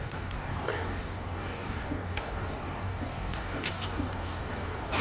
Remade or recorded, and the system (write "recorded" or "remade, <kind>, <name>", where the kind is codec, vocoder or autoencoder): remade, codec, DAC